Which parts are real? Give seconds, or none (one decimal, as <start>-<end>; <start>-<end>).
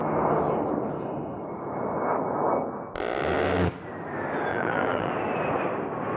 0.0-4.5; 5.1-6.2